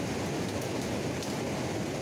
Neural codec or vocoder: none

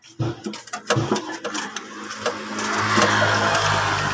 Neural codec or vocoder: none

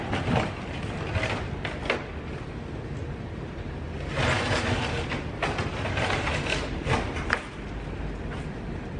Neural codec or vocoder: none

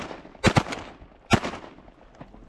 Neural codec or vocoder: none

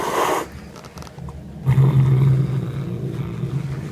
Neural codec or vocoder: none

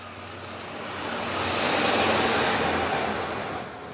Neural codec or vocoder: none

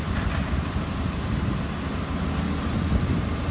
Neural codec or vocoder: vocoder, BigVGAN v2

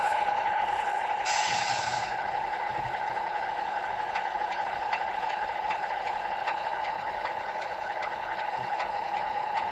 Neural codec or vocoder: codec, HILCodec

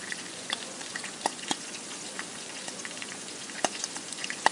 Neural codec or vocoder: vocoder, Vocos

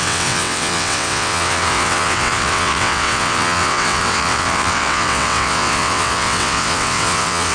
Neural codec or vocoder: vocoder, WaveNeXt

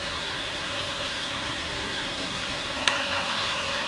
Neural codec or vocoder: codec, SNAC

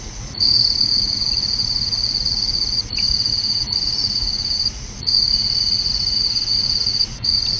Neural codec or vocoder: vocoder, Vocos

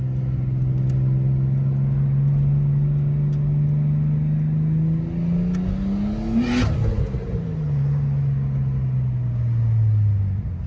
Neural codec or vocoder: none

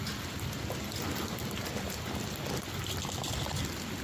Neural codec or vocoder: none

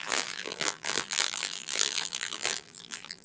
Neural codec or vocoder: vocoder, BigVGAN v2